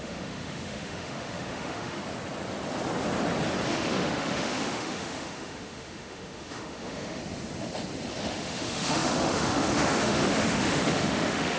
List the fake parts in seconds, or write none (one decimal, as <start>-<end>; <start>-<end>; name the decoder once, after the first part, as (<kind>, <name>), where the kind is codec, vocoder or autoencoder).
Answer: 0.0-2.0 (autoencoder, DAC-VAE); 3.7-7.2; 8.2-11.6